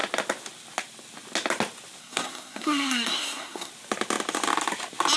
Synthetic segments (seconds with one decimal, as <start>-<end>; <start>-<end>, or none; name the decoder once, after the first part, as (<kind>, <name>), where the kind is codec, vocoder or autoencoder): 2.0-3.7 (codec, SNAC)